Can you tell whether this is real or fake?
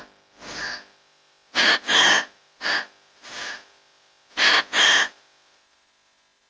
real